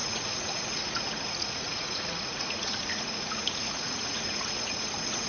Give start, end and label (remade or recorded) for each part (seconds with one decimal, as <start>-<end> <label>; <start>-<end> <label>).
0.0-5.3 remade

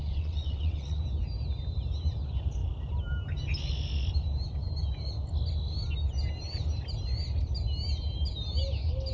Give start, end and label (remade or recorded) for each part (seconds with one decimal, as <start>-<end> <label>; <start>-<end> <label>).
0.0-1.0 remade; 1.0-9.1 recorded